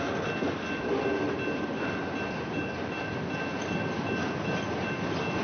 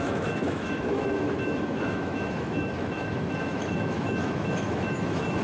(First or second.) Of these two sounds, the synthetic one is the second